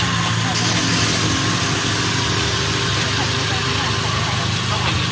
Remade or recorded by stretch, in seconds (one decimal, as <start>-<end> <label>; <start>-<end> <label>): 0.0-5.1 recorded